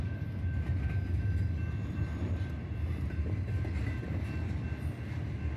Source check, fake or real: real